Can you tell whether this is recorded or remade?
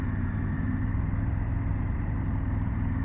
remade